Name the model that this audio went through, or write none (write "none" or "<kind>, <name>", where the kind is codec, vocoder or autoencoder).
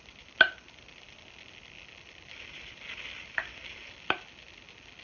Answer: none